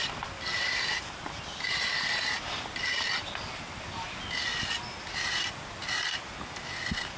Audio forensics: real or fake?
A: real